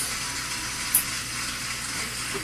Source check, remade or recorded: recorded